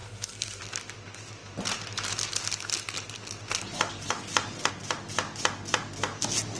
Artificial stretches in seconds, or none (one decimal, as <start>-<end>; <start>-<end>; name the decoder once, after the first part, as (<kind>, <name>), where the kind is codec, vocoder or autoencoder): 0.0-0.6 (codec, SNAC)